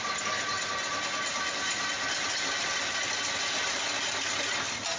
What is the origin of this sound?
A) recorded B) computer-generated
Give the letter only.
A